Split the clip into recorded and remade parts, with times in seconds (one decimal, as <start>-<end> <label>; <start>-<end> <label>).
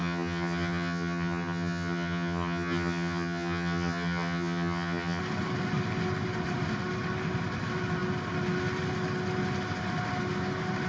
0.0-5.2 remade; 5.2-10.9 recorded